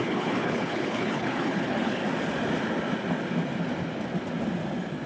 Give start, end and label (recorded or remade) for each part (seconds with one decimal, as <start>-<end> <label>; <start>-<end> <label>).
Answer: 0.0-2.0 remade; 2.0-5.1 recorded